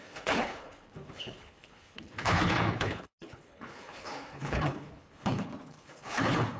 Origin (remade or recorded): remade